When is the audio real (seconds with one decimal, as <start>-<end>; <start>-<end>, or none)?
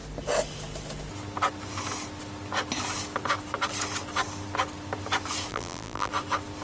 0.0-5.5; 6.1-6.6